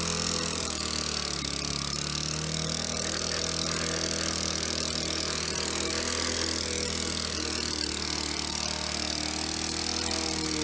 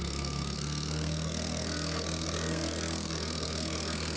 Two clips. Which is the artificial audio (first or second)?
second